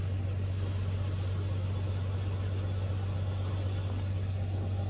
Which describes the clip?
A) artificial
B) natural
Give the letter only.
B